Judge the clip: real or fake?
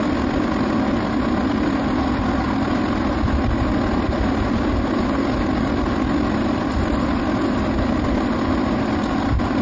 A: real